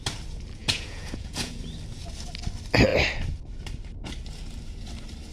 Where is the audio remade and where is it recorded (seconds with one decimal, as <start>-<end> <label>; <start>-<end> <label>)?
0.0-0.6 recorded; 0.6-1.6 remade; 1.6-5.3 recorded